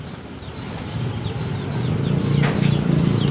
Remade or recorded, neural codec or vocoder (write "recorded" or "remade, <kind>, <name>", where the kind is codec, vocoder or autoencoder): recorded